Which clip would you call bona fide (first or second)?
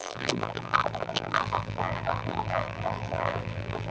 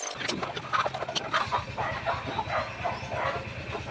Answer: second